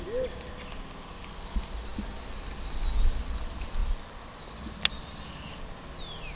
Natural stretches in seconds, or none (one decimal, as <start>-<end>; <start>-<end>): 0.0-6.4